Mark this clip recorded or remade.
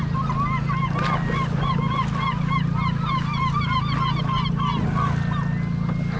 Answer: recorded